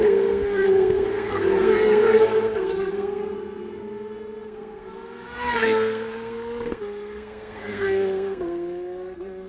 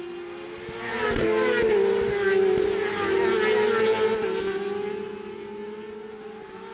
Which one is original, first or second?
second